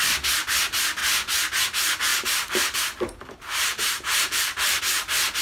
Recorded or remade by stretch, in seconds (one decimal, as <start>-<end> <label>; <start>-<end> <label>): 0.0-2.1 recorded; 2.1-4.8 remade; 4.8-5.4 recorded